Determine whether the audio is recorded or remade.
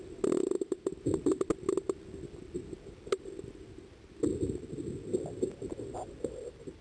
recorded